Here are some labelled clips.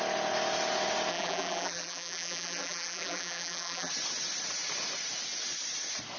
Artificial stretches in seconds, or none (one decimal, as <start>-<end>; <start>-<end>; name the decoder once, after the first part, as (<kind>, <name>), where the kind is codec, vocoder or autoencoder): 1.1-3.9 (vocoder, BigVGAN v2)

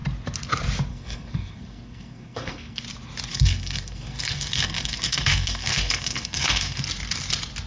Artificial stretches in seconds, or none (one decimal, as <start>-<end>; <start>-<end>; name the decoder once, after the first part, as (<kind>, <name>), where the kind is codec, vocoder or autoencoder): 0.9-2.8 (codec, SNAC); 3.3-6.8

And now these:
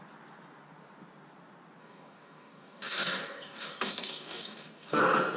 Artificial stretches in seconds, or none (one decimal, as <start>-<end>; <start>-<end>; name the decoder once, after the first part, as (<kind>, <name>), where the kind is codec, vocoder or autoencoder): 1.8-5.0 (codec, DAC)

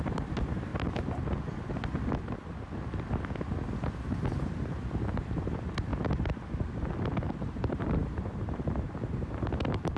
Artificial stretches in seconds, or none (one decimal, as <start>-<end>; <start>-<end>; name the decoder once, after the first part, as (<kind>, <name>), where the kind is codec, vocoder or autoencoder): 0.0-0.7 (vocoder, BigVGAN v2); 5.2-5.9; 7.3-10.0

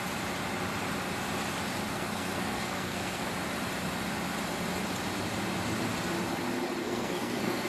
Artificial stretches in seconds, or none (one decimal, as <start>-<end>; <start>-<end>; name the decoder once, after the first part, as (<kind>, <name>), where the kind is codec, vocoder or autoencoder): 1.9-3.3 (codec, SNAC); 6.8-7.7

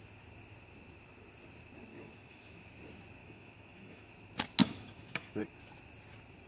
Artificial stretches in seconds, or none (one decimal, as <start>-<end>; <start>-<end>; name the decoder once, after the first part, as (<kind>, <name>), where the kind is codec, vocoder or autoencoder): 1.9-2.7 (autoencoder, DAC-VAE); 3.2-4.1; 4.6-5.4